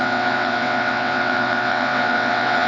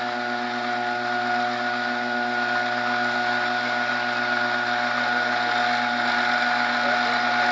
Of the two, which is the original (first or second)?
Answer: second